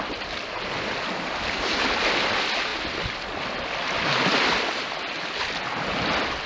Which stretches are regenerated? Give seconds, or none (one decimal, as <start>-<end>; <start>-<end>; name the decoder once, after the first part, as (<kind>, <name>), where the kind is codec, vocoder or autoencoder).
none